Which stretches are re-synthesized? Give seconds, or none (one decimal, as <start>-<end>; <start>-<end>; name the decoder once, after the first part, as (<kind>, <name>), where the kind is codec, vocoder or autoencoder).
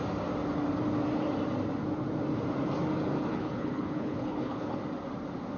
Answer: 3.3-4.8 (codec, HILCodec)